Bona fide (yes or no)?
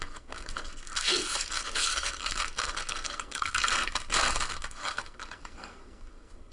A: no